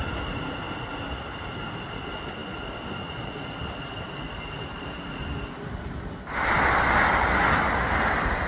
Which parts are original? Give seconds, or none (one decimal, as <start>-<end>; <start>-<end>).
0.0-8.5